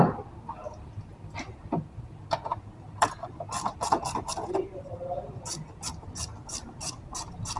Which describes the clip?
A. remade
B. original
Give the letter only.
A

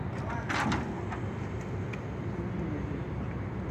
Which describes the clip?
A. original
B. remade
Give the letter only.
A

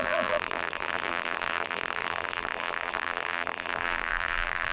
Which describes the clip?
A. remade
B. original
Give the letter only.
A